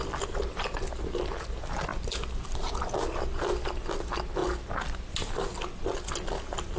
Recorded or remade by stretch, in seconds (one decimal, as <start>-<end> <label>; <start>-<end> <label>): 0.0-6.8 recorded